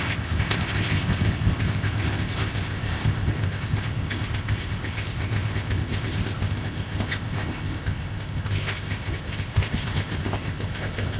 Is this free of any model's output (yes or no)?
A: no